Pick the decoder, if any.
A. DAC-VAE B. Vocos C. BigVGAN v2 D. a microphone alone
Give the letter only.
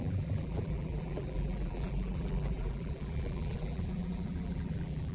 C